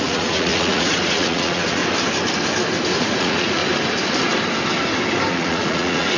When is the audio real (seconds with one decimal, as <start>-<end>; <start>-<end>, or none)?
1.8-3.0; 3.6-5.3